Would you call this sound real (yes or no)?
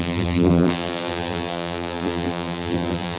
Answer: no